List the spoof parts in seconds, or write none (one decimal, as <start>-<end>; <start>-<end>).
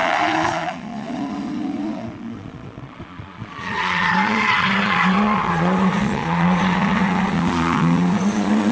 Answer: 0.0-8.7